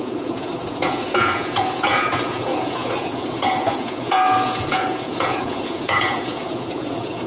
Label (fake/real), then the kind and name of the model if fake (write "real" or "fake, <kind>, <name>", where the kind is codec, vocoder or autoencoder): fake, vocoder, Vocos